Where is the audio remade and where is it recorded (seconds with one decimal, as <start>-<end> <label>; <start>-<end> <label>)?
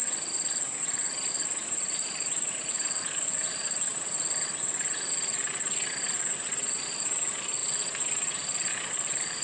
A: 0.0-1.3 recorded; 1.3-3.9 remade; 3.9-6.7 recorded; 6.7-7.6 remade; 7.6-8.7 recorded; 8.7-9.4 remade